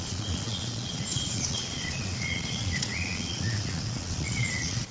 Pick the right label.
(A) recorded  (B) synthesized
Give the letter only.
B